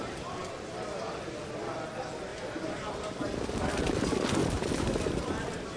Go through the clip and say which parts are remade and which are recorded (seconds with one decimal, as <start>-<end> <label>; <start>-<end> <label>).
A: 0.0-2.3 recorded; 2.3-2.9 remade; 2.9-4.4 recorded; 4.4-5.8 remade